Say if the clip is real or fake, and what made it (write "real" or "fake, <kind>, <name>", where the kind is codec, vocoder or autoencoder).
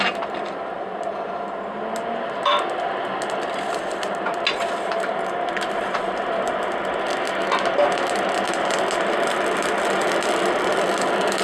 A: real